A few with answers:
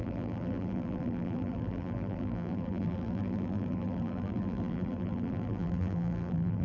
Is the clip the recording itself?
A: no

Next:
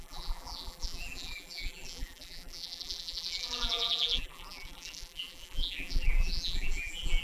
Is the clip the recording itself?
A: no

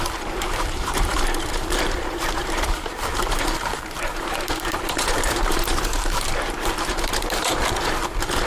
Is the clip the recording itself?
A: no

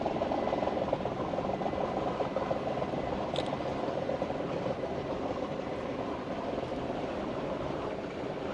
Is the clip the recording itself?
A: no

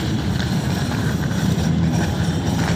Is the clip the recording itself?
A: no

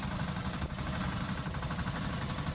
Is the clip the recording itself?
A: no